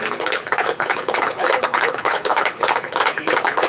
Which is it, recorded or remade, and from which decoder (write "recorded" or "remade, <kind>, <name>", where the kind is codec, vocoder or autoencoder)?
remade, codec, HILCodec